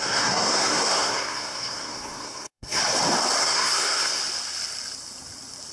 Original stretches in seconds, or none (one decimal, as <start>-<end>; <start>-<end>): 2.8-3.4; 4.2-5.7